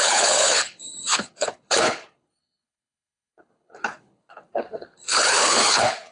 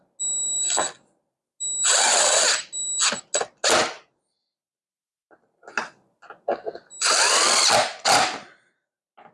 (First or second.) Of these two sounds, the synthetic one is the first